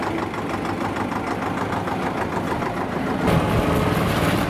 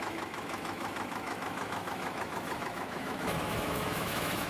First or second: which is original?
first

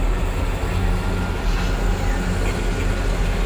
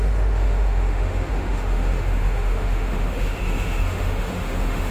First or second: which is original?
first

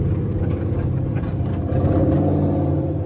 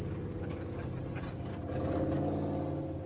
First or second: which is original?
second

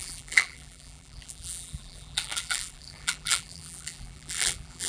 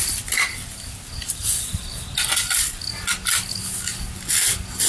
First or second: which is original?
second